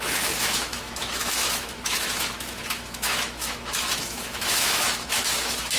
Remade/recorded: remade